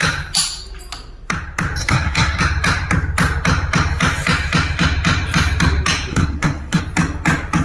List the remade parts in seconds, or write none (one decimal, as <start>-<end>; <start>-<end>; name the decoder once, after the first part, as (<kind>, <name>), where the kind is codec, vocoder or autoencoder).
1.8-2.4 (codec, SNAC); 6.1-6.8